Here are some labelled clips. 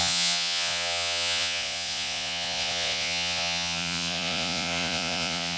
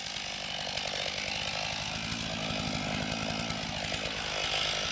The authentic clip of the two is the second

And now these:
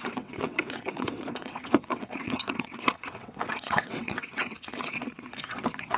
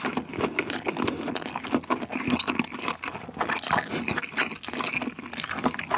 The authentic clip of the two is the second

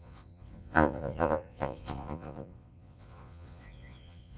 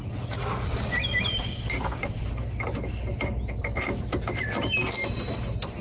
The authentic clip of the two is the second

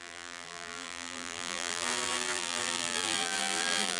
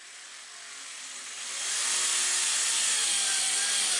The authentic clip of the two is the second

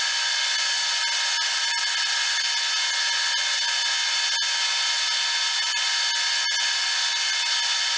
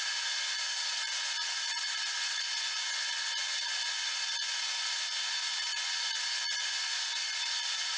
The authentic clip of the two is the first